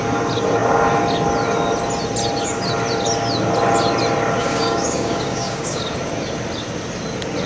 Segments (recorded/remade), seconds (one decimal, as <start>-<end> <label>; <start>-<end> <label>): 0.0-4.4 recorded; 4.4-5.8 remade; 5.8-7.5 recorded